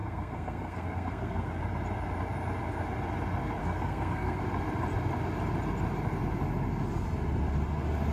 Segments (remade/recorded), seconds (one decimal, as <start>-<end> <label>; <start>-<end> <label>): 0.0-1.6 remade; 1.6-3.6 recorded; 3.6-4.4 remade; 4.4-8.1 recorded